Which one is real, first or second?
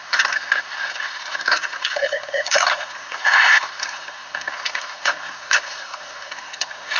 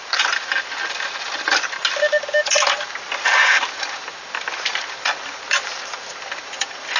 second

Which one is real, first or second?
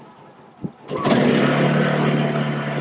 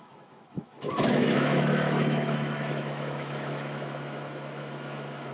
first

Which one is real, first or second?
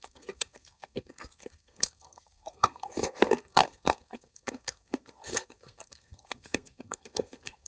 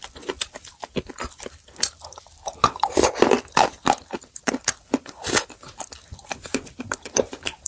second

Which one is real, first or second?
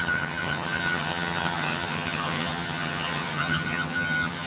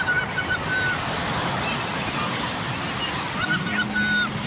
second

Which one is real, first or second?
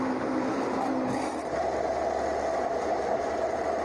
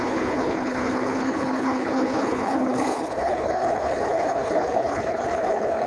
first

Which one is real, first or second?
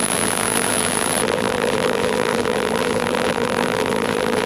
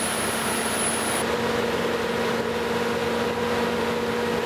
second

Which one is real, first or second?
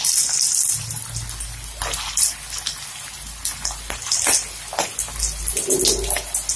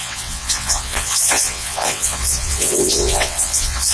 first